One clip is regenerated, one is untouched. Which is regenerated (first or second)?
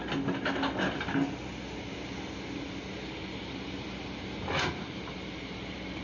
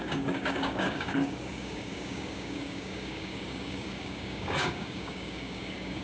second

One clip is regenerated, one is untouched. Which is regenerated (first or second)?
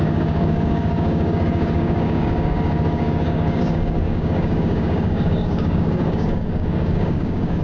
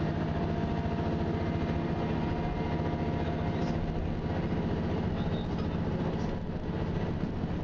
first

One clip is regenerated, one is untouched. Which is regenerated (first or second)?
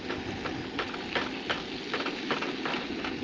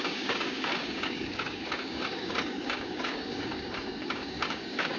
second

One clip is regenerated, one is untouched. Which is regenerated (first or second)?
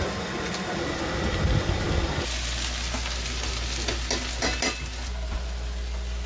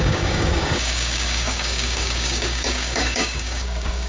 second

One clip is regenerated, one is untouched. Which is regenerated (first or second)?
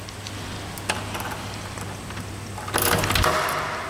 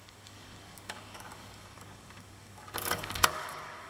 second